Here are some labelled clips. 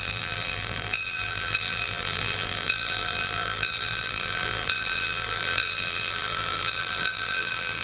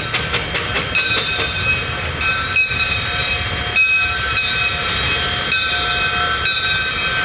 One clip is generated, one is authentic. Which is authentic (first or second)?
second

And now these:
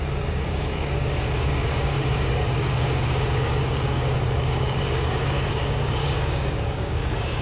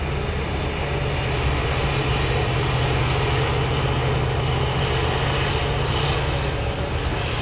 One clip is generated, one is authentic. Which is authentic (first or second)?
second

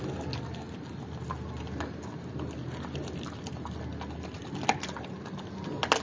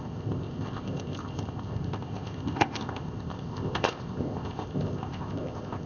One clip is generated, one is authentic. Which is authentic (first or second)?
first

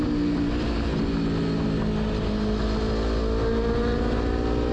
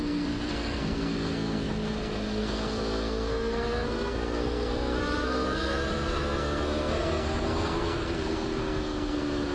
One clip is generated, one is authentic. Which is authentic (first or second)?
first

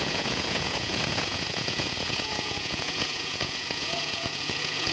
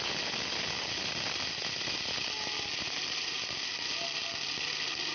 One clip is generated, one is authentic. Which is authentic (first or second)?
second